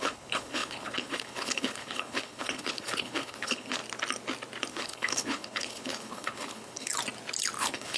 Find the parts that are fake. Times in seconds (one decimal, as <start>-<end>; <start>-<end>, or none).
0.0-3.8; 4.7-6.9; 7.6-8.0